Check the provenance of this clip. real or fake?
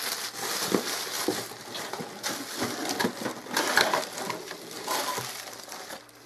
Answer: real